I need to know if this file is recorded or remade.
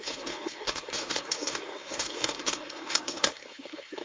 remade